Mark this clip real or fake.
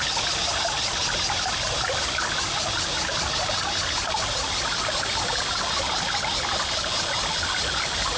real